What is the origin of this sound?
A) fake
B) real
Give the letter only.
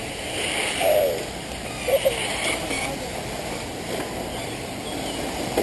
B